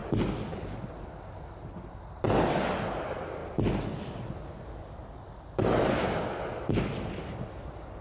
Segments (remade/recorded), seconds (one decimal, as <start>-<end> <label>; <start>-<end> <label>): 0.0-8.0 recorded